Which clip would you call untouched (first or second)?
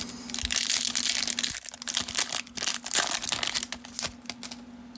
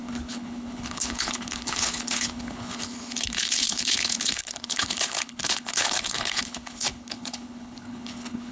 first